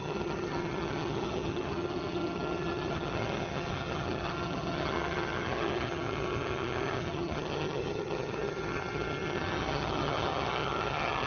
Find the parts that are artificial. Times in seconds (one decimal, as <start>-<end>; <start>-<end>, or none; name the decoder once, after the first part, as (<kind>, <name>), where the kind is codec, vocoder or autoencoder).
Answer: 0.0-11.3 (vocoder, HiFi-GAN)